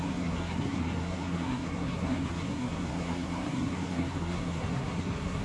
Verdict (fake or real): fake